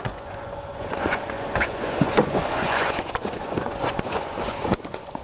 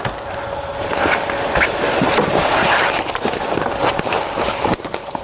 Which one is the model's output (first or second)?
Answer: first